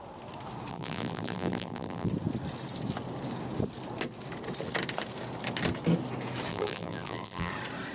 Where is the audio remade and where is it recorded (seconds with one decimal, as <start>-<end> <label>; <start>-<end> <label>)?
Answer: 0.0-0.7 recorded; 0.7-2.1 remade; 2.1-6.5 recorded; 6.5-7.5 remade; 7.5-7.9 recorded